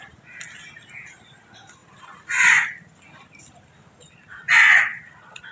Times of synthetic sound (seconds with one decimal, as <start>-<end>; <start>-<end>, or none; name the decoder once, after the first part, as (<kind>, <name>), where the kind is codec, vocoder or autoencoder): none